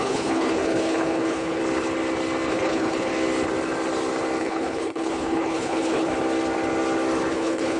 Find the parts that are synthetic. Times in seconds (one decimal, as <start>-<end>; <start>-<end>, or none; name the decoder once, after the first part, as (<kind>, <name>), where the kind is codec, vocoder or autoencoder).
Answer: 0.0-1.6 (codec, HILCodec); 2.5-3.1; 4.4-6.1; 7.3-7.8